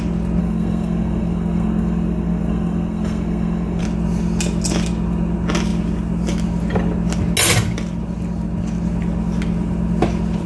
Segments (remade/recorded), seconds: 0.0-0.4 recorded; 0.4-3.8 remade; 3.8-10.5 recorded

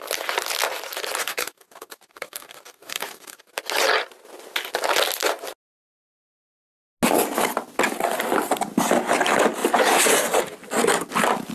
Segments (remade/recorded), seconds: 0.0-1.2 recorded; 1.2-3.5 remade; 3.5-11.5 recorded